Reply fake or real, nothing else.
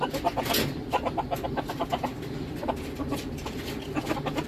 real